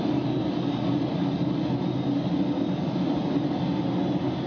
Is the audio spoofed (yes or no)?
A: no